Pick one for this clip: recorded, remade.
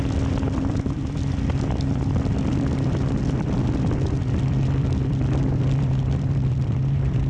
remade